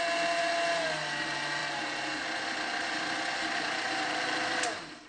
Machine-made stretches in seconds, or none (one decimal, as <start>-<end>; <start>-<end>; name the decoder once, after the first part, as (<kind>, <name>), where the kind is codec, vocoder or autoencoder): none